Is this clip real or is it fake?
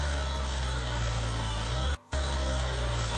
fake